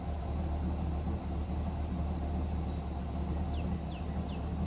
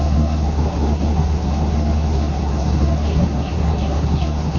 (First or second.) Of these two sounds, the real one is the first